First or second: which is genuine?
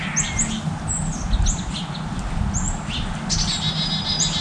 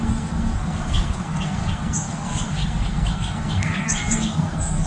first